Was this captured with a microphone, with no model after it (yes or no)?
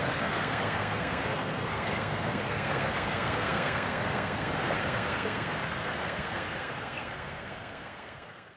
no